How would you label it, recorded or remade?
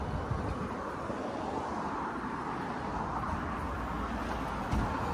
recorded